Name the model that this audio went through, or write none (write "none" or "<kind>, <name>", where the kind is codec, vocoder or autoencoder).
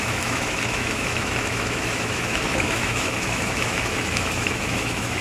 autoencoder, DAC-VAE